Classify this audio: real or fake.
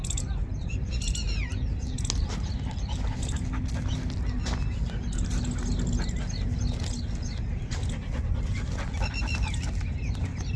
real